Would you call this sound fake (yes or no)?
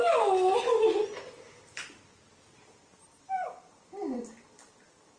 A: no